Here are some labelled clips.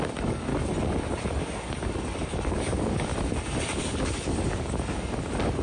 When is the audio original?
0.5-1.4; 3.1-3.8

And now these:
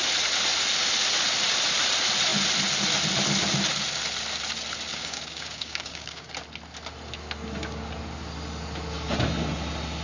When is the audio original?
0.0-4.9; 6.3-10.0

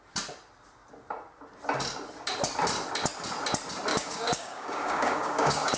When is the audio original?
0.0-3.9

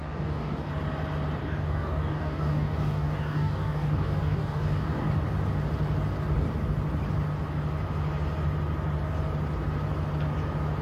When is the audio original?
0.7-1.4; 5.1-10.8

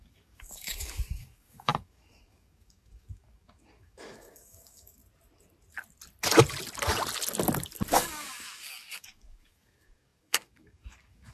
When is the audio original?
5.0-7.9